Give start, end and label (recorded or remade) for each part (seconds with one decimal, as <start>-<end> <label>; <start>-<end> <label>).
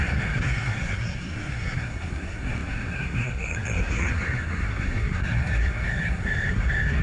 0.0-7.0 remade